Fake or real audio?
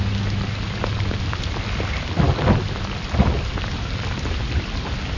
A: real